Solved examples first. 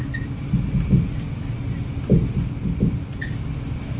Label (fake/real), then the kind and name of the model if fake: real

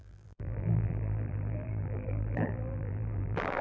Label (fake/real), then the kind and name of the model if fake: fake, vocoder, BigVGAN v2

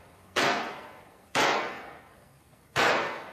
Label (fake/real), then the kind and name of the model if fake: fake, codec, SNAC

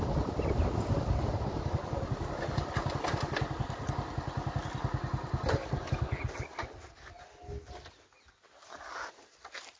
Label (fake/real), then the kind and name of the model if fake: real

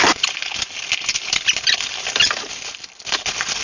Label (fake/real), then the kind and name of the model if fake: real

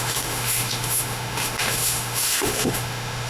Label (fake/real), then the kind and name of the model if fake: fake, autoencoder, DAC-VAE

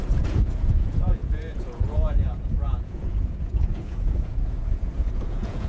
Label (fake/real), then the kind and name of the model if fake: fake, vocoder, Vocos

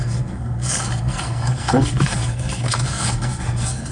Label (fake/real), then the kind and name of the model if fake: fake, codec, SNAC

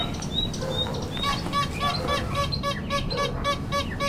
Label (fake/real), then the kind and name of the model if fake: real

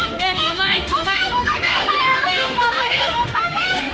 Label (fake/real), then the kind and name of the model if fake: fake, autoencoder, DAC-VAE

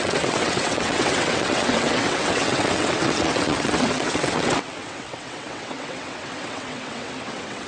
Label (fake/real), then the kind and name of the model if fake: fake, vocoder, WaveNeXt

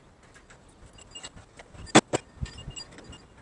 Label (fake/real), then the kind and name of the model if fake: real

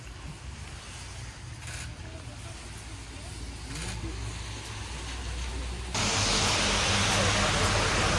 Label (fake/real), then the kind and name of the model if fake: real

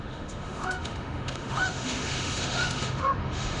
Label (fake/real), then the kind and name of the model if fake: fake, autoencoder, DAC-VAE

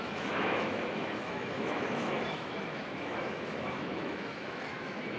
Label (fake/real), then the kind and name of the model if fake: fake, autoencoder, DAC-VAE